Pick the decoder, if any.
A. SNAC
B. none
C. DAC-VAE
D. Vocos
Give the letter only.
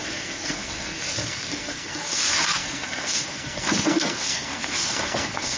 A